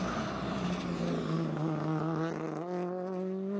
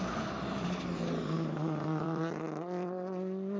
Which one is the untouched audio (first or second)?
first